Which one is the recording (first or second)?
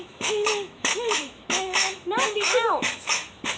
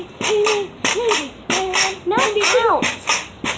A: second